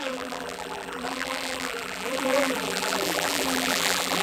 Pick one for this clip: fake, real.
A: fake